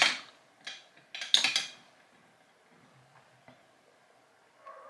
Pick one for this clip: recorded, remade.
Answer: recorded